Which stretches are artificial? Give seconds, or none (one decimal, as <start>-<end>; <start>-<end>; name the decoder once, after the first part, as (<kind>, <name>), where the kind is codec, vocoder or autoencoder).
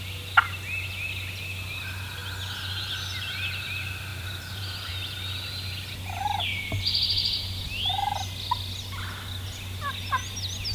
4.1-4.9 (vocoder, BigVGAN v2)